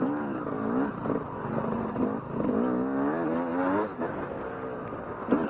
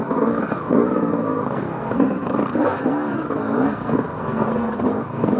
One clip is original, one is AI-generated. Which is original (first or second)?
first